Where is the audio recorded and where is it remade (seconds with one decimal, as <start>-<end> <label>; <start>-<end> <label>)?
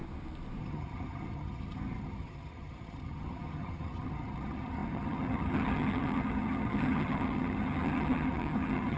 0.0-0.6 recorded; 0.6-9.0 remade